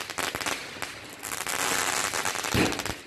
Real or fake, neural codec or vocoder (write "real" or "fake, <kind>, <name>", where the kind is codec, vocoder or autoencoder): real